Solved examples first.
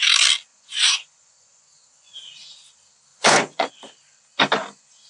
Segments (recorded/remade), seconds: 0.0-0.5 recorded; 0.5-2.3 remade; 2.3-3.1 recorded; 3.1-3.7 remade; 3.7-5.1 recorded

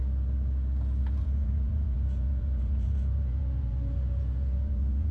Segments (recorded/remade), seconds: 0.0-1.0 recorded; 1.0-5.1 remade

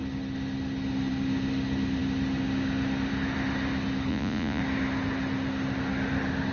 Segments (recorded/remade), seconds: 0.0-4.1 recorded; 4.1-4.6 remade; 4.6-6.5 recorded

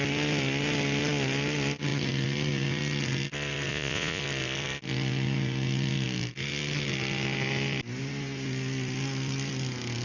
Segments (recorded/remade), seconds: 0.0-3.7 recorded; 3.7-4.2 remade; 4.2-10.0 recorded